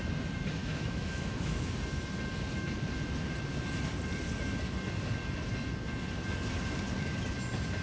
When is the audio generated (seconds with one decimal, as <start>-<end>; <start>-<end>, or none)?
0.6-1.7